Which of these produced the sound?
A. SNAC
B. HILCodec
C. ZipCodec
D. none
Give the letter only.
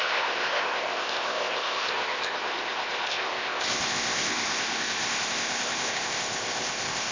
C